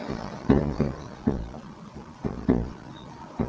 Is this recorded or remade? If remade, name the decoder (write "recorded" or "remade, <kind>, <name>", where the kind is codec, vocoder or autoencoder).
remade, vocoder, Vocos